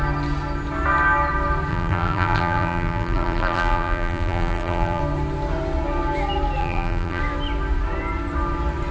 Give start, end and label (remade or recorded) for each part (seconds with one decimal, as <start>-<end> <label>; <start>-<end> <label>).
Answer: 0.0-1.7 recorded; 1.7-5.0 remade; 5.0-6.6 recorded; 6.6-7.2 remade; 7.2-8.9 recorded